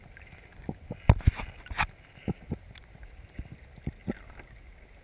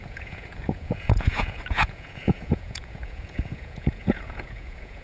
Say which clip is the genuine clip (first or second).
first